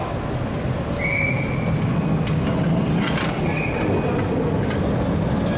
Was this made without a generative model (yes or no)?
yes